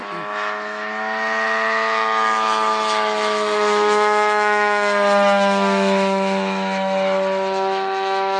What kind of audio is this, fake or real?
fake